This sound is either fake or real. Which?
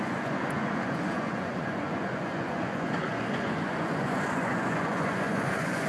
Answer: fake